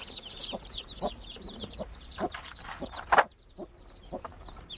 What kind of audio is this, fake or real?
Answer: fake